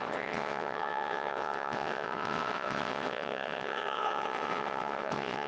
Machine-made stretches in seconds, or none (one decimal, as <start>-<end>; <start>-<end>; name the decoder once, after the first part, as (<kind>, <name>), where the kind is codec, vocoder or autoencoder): 0.0-5.5 (vocoder, WaveNeXt)